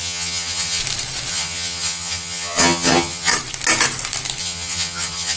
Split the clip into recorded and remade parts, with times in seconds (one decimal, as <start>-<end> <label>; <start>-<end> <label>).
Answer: 0.0-0.8 remade; 0.8-1.3 recorded; 1.3-3.3 remade; 3.3-4.4 recorded; 4.4-5.4 remade